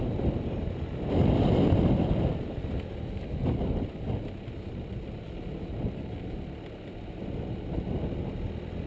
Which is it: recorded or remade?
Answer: recorded